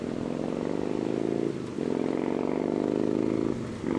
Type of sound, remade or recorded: recorded